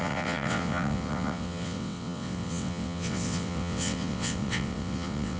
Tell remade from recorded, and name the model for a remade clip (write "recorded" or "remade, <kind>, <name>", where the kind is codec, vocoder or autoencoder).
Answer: remade, vocoder, WaveNeXt